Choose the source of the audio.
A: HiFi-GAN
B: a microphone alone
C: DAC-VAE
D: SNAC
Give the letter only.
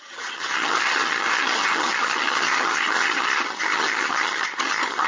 A